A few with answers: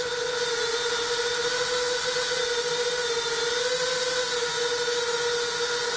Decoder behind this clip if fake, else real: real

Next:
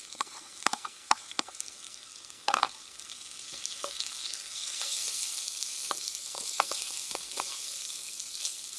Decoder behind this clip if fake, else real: fake, codec, SNAC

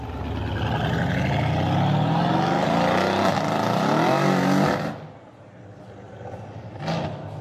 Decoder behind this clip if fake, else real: real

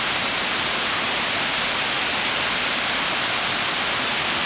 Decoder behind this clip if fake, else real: real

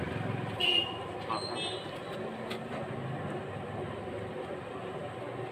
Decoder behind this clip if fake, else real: real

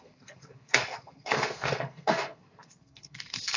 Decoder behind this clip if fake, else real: fake, codec, SNAC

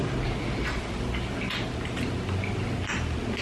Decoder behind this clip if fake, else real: real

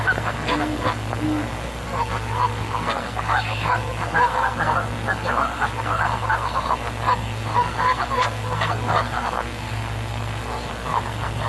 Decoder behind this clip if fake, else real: fake, codec, SNAC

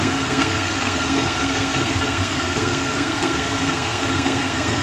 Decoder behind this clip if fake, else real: fake, codec, SNAC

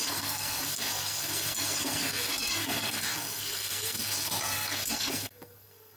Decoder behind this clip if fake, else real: fake, codec, SNAC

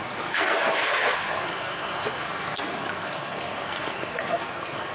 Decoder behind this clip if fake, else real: fake, codec, SNAC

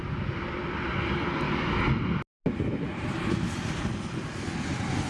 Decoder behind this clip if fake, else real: real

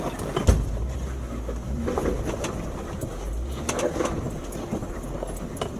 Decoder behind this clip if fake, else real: real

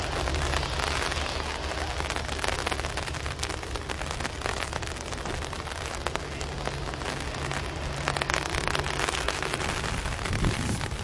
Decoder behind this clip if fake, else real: real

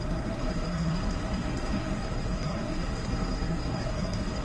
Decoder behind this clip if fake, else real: fake, codec, SNAC